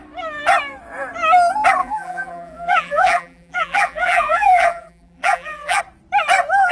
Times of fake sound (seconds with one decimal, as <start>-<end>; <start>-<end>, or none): 1.8-5.8